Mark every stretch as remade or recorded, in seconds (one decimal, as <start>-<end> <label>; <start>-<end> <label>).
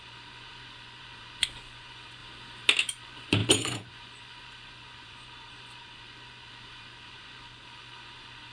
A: 0.0-2.2 remade; 2.2-2.9 recorded; 2.9-8.5 remade